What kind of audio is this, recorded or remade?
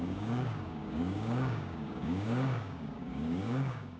remade